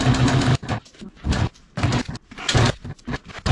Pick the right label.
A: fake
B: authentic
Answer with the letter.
B